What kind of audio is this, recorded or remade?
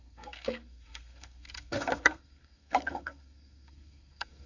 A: remade